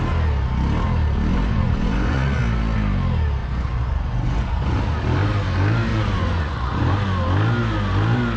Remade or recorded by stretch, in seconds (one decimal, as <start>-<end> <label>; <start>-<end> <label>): 0.0-1.3 recorded; 1.3-2.4 remade; 2.4-3.4 recorded; 3.4-4.8 remade; 4.8-5.9 recorded; 5.9-6.8 remade; 6.8-8.4 recorded